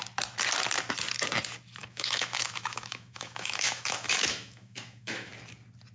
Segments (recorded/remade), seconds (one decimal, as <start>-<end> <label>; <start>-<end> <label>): 0.0-1.8 recorded; 1.8-5.3 remade; 5.3-5.9 recorded